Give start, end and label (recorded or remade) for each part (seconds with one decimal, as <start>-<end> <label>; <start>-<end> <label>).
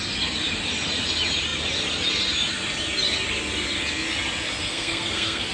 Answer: 0.0-4.6 recorded; 4.6-5.5 remade